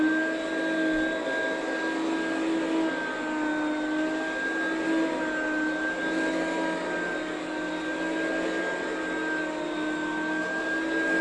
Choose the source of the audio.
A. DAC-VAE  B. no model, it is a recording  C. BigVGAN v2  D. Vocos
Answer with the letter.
B